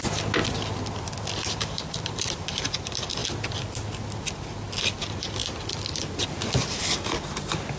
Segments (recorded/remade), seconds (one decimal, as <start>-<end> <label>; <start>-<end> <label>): 0.0-7.8 recorded